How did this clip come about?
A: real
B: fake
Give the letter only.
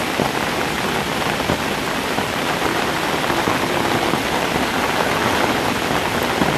A